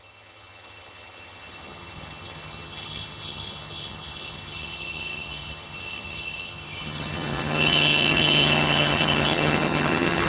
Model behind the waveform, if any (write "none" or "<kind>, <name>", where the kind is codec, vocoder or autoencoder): vocoder, HiFi-GAN